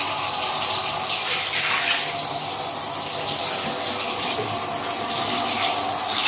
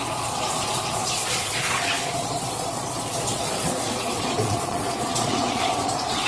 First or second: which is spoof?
second